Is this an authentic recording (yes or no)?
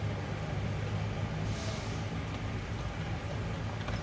yes